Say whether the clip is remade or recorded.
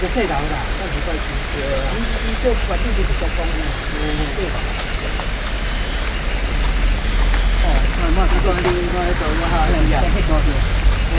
recorded